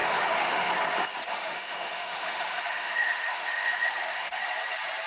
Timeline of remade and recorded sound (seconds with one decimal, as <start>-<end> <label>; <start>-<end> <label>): 0.0-0.7 remade; 0.7-1.3 recorded; 1.3-4.4 remade; 4.4-5.1 recorded